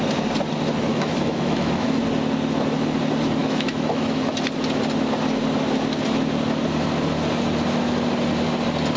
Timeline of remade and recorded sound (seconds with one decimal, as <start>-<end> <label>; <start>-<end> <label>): 0.0-0.9 recorded; 0.9-2.0 remade; 2.0-3.4 recorded; 3.4-4.2 remade; 4.2-9.0 recorded